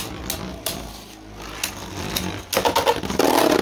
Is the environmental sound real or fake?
real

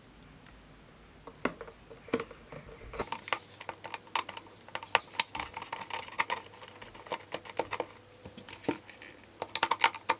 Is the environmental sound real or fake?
real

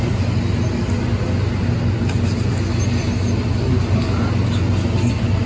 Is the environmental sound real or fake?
real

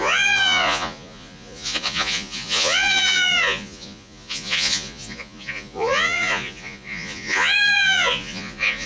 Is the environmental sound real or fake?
fake